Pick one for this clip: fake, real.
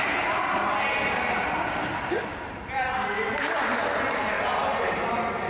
real